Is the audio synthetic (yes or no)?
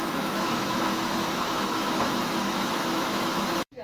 yes